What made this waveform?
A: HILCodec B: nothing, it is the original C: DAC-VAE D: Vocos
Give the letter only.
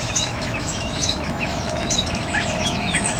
C